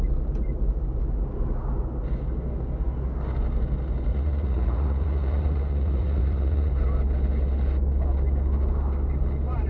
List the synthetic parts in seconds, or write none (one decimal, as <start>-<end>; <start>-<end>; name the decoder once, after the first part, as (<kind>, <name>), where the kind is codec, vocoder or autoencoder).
4.1-6.7 (vocoder, Vocos)